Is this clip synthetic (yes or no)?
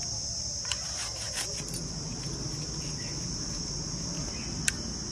no